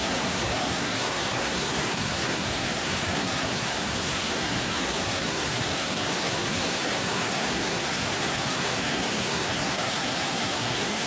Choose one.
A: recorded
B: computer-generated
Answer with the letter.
B